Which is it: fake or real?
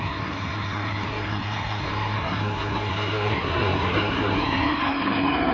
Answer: fake